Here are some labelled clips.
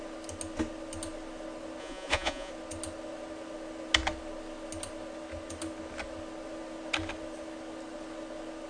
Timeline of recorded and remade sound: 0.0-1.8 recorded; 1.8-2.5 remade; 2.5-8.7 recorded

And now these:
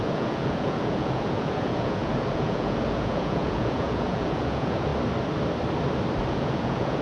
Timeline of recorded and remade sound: 0.0-4.9 remade; 4.9-6.3 recorded; 6.3-7.0 remade

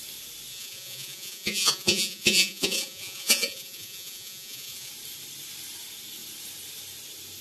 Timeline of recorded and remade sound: 0.0-0.5 recorded; 0.5-4.9 remade; 4.9-7.4 recorded

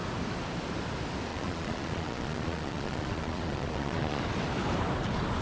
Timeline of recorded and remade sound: 0.0-1.3 recorded; 1.3-4.2 remade; 4.2-5.4 recorded

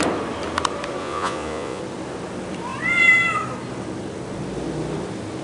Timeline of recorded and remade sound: 0.0-1.0 recorded; 1.0-1.8 remade; 1.8-5.4 recorded

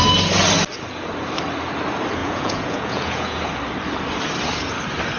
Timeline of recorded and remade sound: 0.0-2.2 recorded; 2.2-3.4 remade; 3.4-5.2 recorded